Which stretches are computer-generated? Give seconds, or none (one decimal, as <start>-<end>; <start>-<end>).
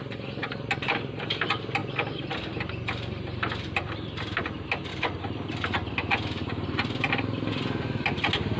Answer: none